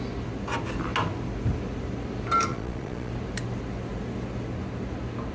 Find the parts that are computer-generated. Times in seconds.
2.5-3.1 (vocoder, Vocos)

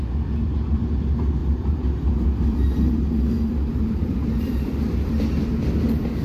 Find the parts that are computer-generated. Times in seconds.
1.4-5.1 (vocoder, BigVGAN v2)

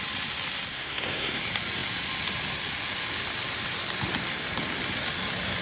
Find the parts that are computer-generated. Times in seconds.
0.7-1.4 (codec, SNAC)

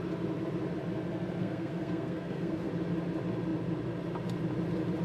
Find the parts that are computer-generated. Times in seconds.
1.4-2.7 (codec, SNAC)

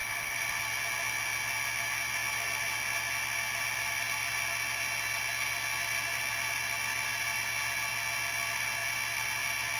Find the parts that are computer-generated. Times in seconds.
0.0-0.6 (vocoder, BigVGAN v2)

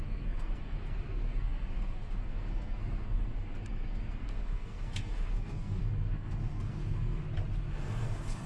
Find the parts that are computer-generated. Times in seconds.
0.0-7.2 (codec, SNAC); 7.7-8.5

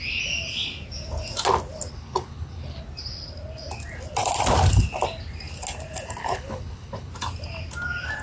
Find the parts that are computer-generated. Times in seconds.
1.9-2.8 (codec, HILCodec); 6.2-7.1